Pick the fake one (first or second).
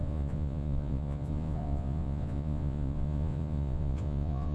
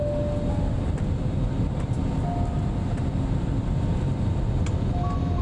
first